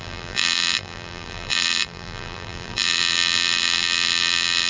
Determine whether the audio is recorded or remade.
remade